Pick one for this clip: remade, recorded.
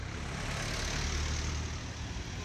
recorded